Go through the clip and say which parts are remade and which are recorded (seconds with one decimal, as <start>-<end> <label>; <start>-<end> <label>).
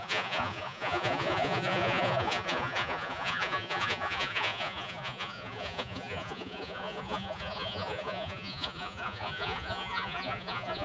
0.0-10.8 remade